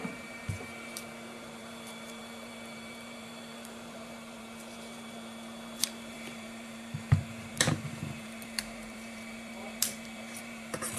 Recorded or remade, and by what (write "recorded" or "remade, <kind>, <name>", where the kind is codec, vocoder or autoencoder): remade, vocoder, BigVGAN v2